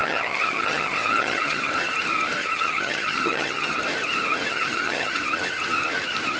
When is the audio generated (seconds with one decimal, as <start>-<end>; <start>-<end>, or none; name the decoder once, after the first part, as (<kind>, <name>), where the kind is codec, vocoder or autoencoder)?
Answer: 0.0-1.7 (vocoder, HiFi-GAN); 2.4-3.8; 4.5-5.2